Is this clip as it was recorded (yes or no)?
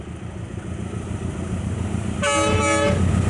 yes